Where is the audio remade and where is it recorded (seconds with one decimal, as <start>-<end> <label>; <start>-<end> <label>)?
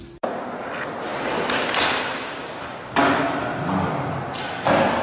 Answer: 0.0-5.0 recorded